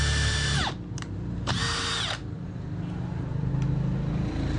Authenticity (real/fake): real